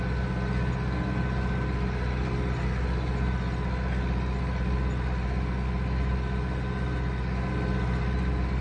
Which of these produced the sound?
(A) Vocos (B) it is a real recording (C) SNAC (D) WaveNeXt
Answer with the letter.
B